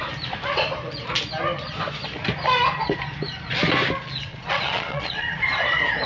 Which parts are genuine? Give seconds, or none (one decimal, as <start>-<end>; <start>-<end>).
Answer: 0.0-4.3; 5.4-6.1